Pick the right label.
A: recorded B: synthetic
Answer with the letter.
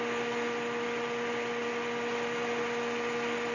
A